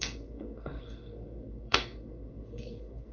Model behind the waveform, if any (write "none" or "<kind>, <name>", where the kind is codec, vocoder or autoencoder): codec, SNAC